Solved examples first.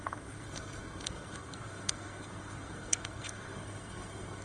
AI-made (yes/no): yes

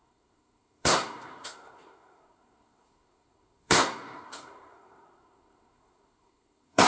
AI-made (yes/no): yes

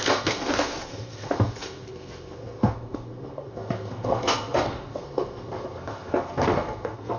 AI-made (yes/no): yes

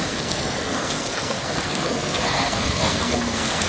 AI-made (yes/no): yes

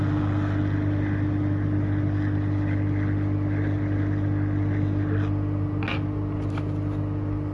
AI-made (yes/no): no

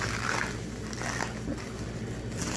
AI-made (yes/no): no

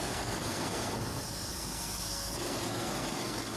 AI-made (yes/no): yes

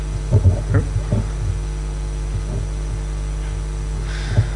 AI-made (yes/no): no